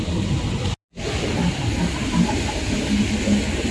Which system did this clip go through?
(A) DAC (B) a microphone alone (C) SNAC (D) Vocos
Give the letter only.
B